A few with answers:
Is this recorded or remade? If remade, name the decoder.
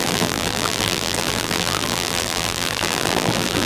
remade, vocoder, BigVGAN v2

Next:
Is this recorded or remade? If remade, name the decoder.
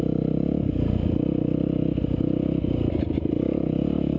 recorded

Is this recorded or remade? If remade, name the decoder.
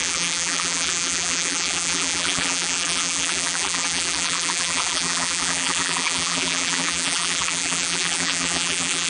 remade, vocoder, BigVGAN v2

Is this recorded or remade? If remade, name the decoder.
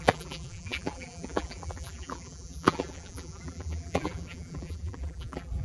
remade, vocoder, BigVGAN v2